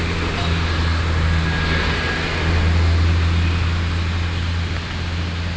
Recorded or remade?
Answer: recorded